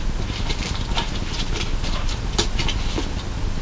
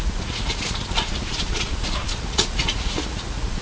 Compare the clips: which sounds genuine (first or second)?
first